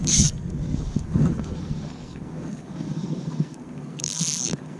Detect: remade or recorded remade